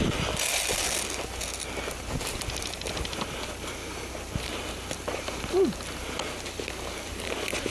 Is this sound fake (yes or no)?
no